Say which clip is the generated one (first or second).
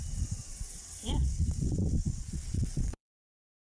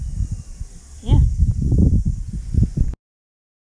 first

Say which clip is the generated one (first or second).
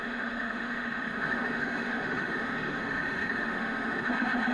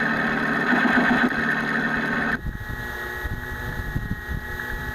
first